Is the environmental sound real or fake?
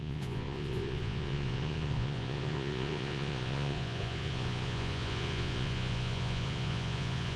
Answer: fake